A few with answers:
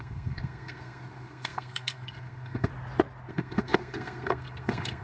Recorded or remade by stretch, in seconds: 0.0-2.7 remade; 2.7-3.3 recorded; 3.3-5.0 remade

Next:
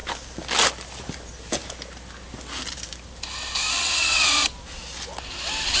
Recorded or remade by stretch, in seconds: 0.0-3.8 recorded; 3.8-4.3 remade; 4.3-5.8 recorded

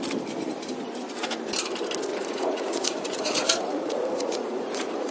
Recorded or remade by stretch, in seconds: 0.0-2.1 recorded; 2.1-5.1 remade

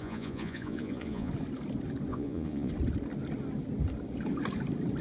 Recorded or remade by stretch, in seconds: 0.0-1.3 remade; 1.3-2.1 recorded; 2.1-2.7 remade; 2.7-5.0 recorded

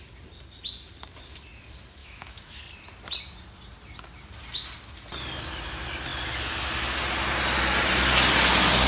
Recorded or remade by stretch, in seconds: 0.0-2.0 recorded; 2.0-2.6 remade; 2.6-8.9 recorded

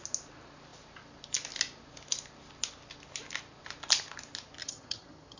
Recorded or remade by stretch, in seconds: 0.0-4.6 recorded; 4.6-5.4 remade